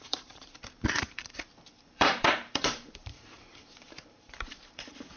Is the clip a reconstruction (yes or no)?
yes